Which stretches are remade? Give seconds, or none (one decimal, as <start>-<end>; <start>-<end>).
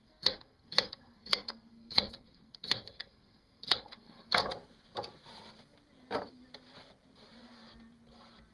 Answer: 0.0-4.4